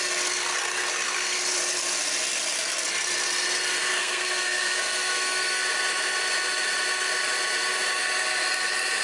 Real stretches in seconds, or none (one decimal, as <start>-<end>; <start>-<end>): 0.0-3.9; 5.6-9.0